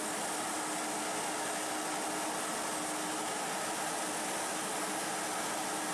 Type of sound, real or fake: real